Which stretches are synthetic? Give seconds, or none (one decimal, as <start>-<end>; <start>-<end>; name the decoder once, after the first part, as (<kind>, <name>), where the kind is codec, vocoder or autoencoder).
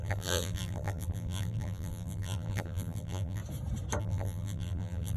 0.0-3.4 (vocoder, BigVGAN v2); 4.0-5.2